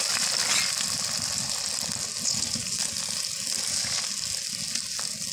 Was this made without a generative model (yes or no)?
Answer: yes